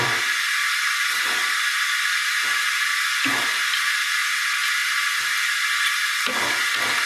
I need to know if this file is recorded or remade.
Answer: recorded